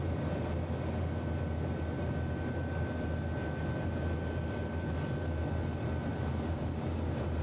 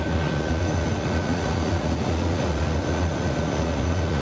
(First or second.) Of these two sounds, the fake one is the second